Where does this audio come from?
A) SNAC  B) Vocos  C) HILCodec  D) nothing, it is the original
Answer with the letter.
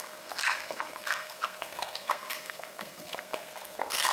A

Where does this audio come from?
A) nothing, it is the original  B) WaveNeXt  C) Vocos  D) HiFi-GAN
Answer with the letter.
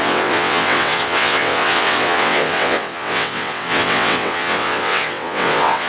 B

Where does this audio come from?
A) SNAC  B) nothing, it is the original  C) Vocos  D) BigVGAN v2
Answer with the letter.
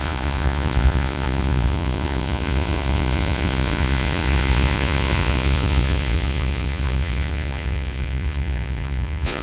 C